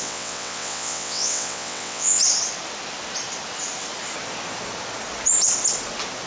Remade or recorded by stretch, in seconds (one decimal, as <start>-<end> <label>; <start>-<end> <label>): 0.0-2.2 remade; 2.2-6.3 recorded

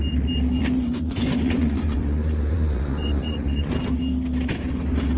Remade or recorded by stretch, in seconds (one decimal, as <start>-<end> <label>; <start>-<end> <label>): 0.0-0.6 recorded; 0.6-3.7 remade; 3.7-5.2 recorded

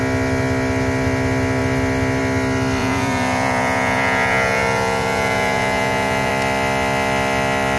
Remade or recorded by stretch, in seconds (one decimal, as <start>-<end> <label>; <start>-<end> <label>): 0.0-2.8 recorded; 2.8-6.3 remade; 6.3-7.8 recorded

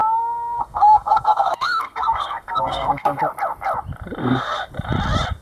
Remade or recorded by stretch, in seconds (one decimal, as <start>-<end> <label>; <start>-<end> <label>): 0.0-3.2 remade; 3.2-4.2 recorded; 4.2-4.7 remade; 4.7-5.4 recorded